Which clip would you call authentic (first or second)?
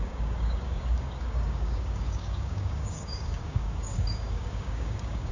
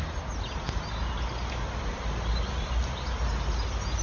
second